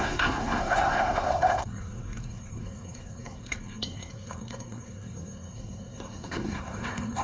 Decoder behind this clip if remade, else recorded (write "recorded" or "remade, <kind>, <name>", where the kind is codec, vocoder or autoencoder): remade, codec, SNAC